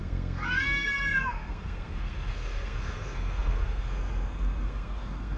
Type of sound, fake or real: fake